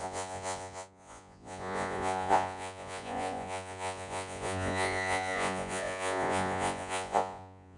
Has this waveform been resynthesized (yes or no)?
yes